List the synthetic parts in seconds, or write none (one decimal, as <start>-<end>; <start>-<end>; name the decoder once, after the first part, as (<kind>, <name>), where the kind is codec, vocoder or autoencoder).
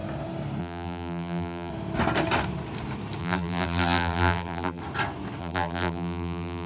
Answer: 0.6-1.7 (vocoder, BigVGAN v2); 3.2-4.8; 5.4-6.7